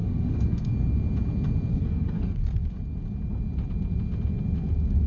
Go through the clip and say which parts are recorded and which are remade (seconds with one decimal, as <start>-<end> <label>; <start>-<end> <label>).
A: 0.0-0.7 remade; 0.7-1.7 recorded; 1.7-2.4 remade; 2.4-5.1 recorded